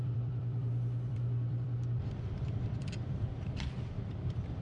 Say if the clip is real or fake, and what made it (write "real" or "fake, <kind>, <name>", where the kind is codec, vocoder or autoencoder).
fake, vocoder, BigVGAN v2